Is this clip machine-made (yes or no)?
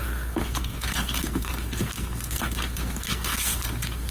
yes